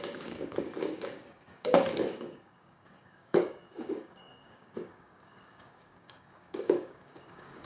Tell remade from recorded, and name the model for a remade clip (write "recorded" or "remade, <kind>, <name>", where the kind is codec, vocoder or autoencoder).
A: remade, codec, DAC